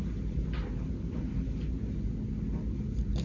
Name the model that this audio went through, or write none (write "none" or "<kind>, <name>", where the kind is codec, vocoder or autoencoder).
none